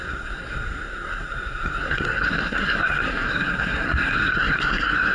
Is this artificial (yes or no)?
yes